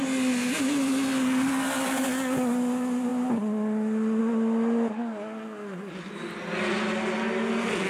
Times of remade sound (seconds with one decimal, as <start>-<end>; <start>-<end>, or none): none